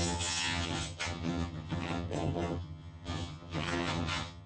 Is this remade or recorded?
remade